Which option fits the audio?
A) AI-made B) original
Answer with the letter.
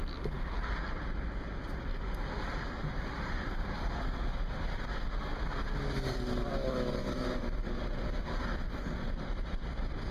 A